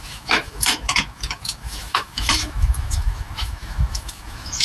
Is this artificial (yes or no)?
yes